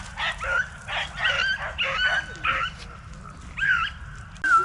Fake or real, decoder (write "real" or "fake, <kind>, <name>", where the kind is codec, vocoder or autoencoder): real